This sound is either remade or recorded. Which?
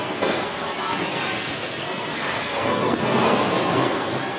remade